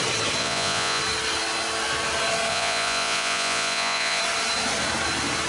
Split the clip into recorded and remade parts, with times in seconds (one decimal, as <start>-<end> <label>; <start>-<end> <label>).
0.0-0.4 recorded; 0.4-1.0 remade; 1.0-2.5 recorded; 2.5-4.2 remade; 4.2-5.5 recorded